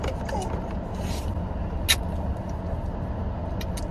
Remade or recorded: recorded